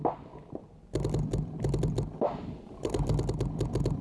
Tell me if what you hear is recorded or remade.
recorded